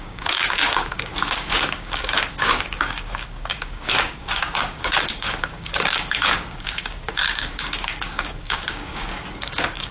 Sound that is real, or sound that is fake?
fake